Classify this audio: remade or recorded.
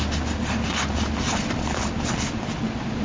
recorded